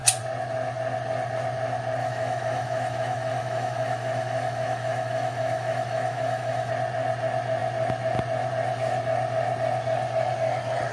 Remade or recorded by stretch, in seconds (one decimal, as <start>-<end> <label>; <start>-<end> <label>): 0.0-2.0 recorded; 2.0-6.7 remade; 6.7-10.9 recorded